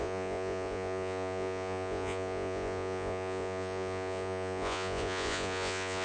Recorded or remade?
remade